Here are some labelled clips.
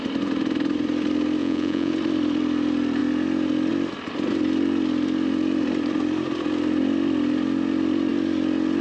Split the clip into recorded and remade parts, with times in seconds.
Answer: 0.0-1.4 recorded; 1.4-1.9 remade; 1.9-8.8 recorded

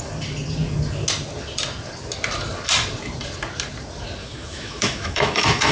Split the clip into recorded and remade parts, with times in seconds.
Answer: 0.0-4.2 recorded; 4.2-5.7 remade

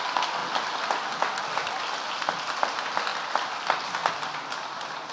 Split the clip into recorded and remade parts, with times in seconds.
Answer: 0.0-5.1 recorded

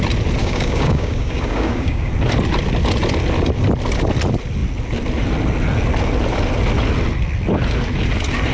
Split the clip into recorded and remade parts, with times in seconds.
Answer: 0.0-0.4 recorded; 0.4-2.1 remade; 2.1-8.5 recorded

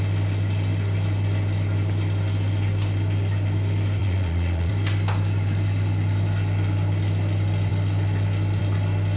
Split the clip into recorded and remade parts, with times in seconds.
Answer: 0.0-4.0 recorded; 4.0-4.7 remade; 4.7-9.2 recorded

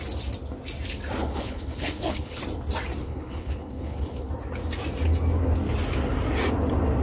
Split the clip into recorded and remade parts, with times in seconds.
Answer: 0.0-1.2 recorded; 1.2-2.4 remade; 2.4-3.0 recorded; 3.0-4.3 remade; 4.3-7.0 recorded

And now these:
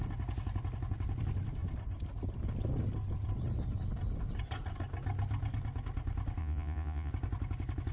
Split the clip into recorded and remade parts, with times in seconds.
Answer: 0.0-6.4 recorded; 6.4-7.1 remade; 7.1-7.9 recorded

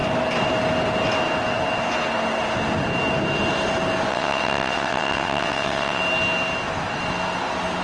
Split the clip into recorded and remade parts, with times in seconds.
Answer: 0.0-4.1 recorded; 4.1-6.0 remade; 6.0-7.8 recorded